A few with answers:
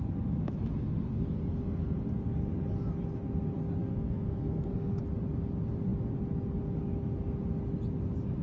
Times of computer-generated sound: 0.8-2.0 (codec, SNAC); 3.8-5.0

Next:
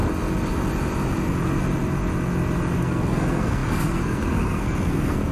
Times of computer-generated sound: 2.8-5.3 (codec, SNAC)

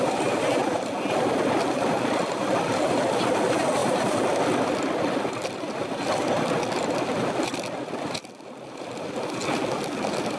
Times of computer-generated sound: none